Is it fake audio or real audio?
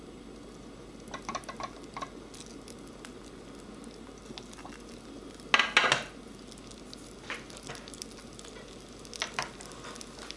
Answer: real